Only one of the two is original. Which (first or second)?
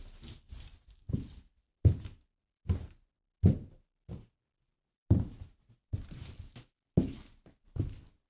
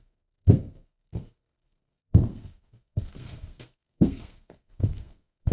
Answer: first